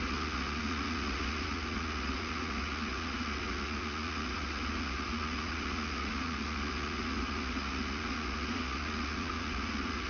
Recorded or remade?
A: remade